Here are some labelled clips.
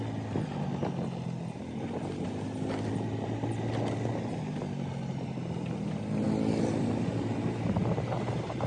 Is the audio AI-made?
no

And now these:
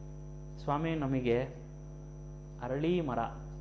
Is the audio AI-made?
no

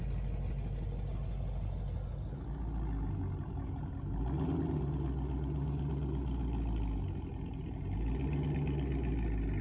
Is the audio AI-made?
no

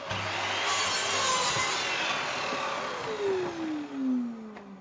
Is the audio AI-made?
no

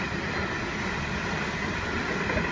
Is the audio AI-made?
no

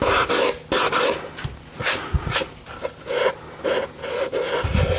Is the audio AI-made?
no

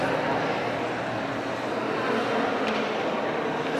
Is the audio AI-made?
no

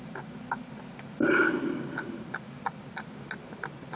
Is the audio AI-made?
no